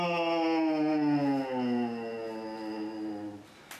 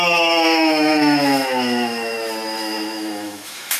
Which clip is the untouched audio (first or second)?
first